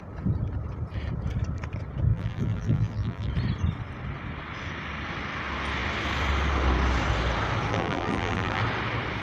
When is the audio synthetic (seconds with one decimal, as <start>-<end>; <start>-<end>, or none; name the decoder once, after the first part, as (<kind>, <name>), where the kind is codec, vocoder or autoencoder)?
2.1-3.3 (vocoder, BigVGAN v2); 7.7-8.6